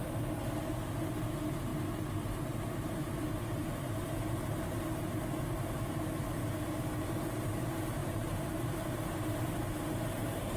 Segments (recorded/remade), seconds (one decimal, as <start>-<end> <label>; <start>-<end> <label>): 0.0-8.0 recorded; 8.0-9.0 remade; 9.0-10.6 recorded